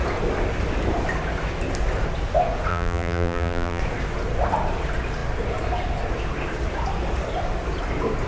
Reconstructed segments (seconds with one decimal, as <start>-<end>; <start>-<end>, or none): 2.7-3.8